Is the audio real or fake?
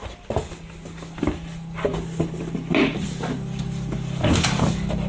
real